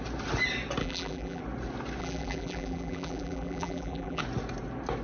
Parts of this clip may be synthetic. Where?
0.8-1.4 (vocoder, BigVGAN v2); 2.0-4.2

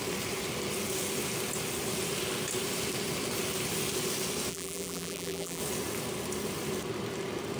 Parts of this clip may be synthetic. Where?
4.5-5.6 (vocoder, BigVGAN v2)

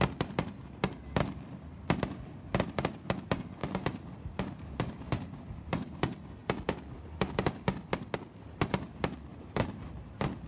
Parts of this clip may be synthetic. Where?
3.6-6.0 (vocoder, BigVGAN v2); 9.3-10.5

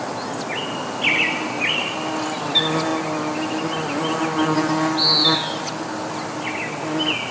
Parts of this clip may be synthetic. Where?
none

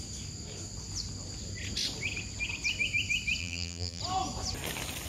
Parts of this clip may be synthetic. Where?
3.4-4.0 (vocoder, BigVGAN v2)

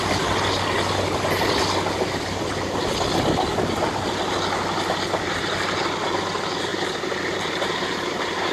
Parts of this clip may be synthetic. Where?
6.7-8.5 (vocoder, BigVGAN v2)

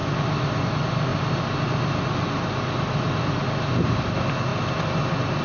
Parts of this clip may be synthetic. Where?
0.0-0.7 (vocoder, BigVGAN v2); 4.5-5.0